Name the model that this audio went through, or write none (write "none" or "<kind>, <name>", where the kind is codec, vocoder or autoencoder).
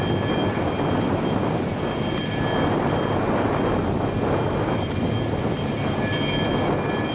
none